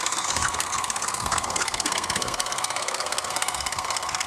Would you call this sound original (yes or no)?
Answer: no